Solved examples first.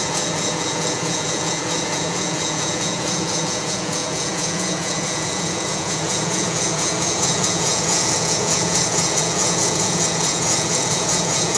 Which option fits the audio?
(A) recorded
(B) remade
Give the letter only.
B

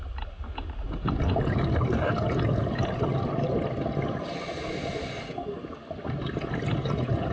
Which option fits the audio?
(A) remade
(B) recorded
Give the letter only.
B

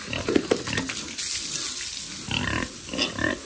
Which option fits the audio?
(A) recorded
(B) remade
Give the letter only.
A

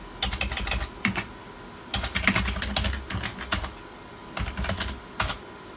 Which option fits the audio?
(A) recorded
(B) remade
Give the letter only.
A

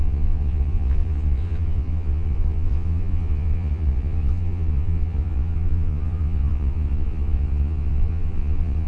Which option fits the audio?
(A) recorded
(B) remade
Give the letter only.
B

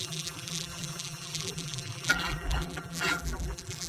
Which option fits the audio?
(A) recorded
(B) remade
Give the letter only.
B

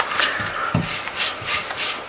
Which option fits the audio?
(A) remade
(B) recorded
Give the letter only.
B